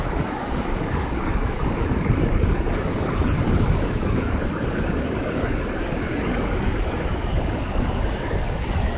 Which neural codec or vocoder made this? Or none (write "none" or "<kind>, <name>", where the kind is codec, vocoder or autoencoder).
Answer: codec, DAC